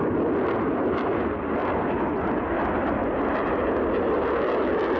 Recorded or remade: recorded